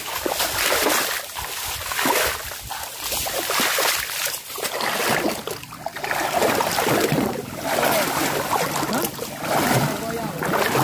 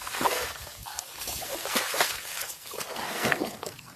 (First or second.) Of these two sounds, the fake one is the second